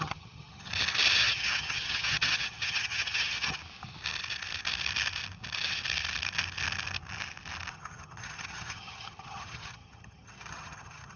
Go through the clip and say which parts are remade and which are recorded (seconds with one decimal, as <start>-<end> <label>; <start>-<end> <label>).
0.0-0.7 remade; 0.7-1.2 recorded; 1.2-3.6 remade; 3.6-7.7 recorded; 7.7-11.2 remade